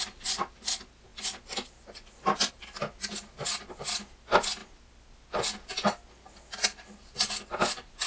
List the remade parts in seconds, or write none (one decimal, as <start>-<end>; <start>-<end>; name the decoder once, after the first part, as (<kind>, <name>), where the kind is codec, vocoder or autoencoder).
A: none